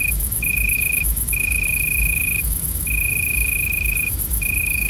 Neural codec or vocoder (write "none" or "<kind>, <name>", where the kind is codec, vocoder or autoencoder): autoencoder, DAC-VAE